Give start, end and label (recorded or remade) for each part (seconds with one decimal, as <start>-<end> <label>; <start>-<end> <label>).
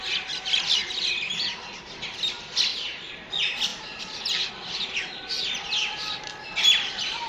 0.0-2.7 recorded; 2.7-3.3 remade; 3.3-3.7 recorded; 3.7-4.5 remade; 4.5-5.8 recorded; 5.8-6.3 remade; 6.3-7.3 recorded